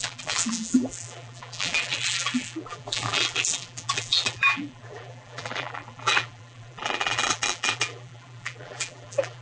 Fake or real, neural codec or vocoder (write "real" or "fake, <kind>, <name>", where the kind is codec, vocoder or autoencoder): fake, vocoder, BigVGAN v2